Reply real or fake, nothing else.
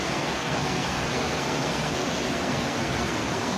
fake